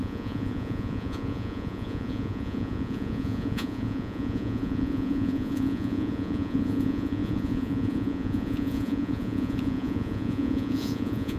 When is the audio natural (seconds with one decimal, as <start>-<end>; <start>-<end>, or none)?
none